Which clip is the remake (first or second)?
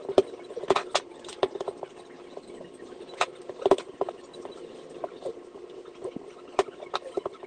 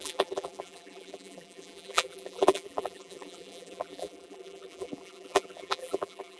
second